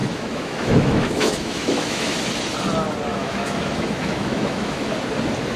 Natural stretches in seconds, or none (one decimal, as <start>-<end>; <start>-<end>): 2.2-3.1; 4.9-5.6